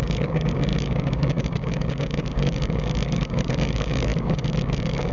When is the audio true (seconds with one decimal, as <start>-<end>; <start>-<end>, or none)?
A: none